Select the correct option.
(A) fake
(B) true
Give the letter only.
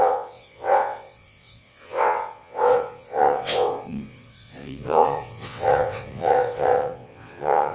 A